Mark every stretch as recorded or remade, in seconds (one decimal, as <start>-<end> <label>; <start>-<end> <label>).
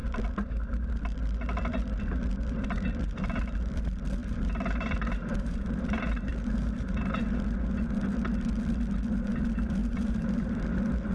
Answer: 0.0-4.2 recorded; 4.2-7.2 remade; 7.2-9.8 recorded; 9.8-10.6 remade; 10.6-11.1 recorded